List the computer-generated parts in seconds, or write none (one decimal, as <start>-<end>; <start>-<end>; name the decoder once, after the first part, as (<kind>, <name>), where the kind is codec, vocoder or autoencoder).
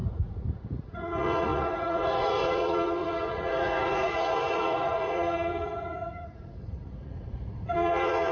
0.0-8.3 (vocoder, Vocos)